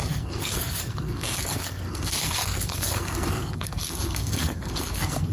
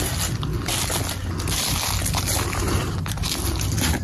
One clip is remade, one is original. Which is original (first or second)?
second